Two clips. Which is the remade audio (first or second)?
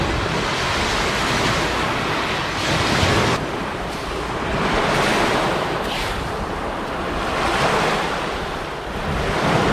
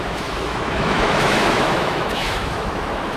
second